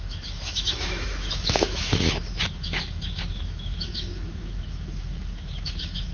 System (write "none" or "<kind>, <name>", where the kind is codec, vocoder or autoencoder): autoencoder, DAC-VAE